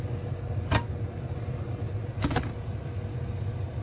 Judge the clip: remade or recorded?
recorded